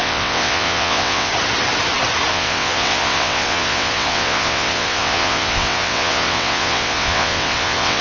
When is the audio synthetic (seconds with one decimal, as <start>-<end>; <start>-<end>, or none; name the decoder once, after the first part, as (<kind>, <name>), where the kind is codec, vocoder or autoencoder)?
0.0-1.3 (vocoder, WaveNeXt); 2.3-8.0